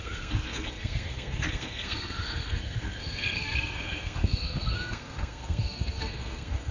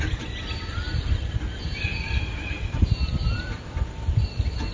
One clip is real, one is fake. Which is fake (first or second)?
first